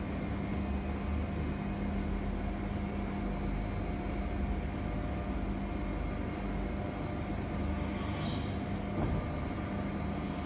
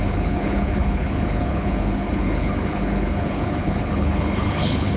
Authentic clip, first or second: first